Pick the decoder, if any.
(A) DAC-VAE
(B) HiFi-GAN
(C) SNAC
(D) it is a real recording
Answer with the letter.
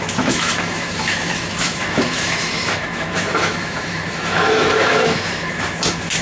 A